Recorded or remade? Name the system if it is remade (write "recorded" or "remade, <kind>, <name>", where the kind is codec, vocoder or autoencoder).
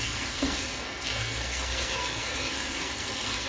remade, codec, SNAC